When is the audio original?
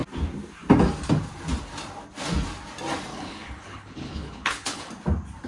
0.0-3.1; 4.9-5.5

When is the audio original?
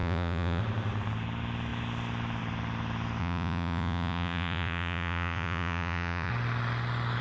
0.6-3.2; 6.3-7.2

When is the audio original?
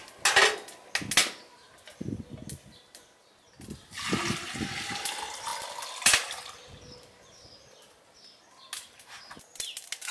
0.0-10.1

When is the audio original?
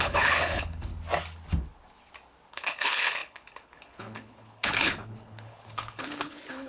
0.9-2.5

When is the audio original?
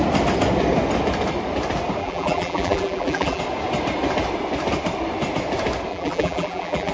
0.0-2.0; 3.4-5.9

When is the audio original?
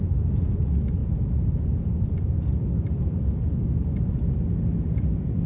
0.0-5.5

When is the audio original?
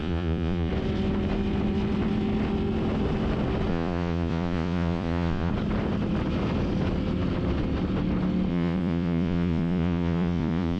0.7-3.7; 5.5-8.5